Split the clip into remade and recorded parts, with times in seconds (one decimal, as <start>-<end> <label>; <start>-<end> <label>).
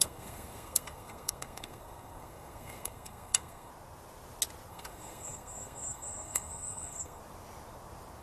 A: 0.0-3.7 remade; 3.7-4.7 recorded; 4.7-7.2 remade; 7.2-8.2 recorded